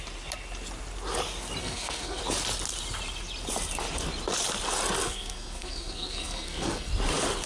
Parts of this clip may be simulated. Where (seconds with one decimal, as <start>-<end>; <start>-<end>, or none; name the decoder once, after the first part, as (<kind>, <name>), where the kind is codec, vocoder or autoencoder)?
1.6-2.2 (codec, SNAC); 5.0-6.9